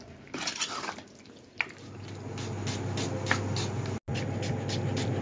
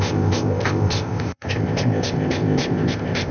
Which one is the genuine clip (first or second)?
first